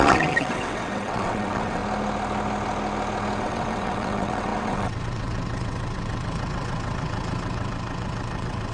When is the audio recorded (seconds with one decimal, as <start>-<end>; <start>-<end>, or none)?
1.8-3.4